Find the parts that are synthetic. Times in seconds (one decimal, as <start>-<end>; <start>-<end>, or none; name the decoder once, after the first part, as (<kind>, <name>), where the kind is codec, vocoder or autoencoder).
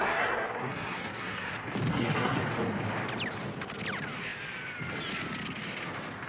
0.0-1.5 (codec, SNAC); 1.9-2.4